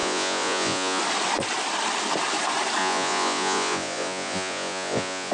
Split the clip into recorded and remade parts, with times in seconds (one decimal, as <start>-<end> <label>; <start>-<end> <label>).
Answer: 0.0-1.0 remade; 1.0-2.8 recorded; 2.8-5.3 remade